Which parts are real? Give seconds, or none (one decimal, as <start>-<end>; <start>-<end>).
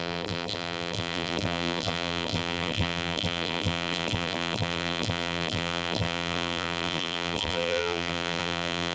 none